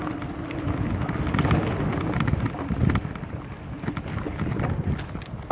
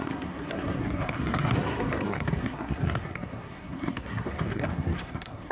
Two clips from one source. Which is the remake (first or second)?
second